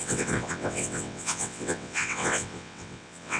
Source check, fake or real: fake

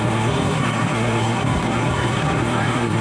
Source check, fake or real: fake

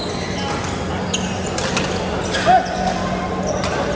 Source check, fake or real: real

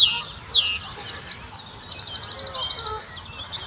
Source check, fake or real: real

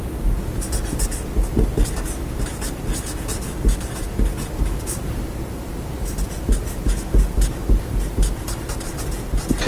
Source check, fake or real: real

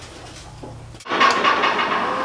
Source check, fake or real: real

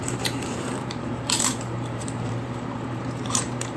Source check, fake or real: fake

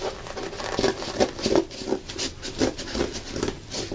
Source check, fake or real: real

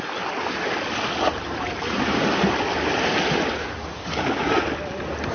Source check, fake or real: real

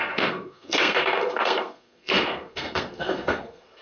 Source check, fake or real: fake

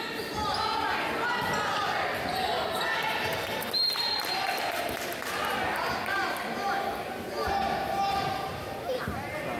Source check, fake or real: real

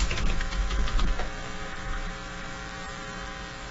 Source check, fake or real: fake